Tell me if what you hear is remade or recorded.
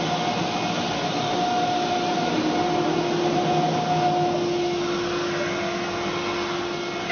recorded